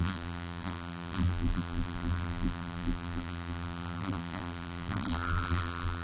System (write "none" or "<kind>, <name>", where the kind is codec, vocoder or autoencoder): vocoder, BigVGAN v2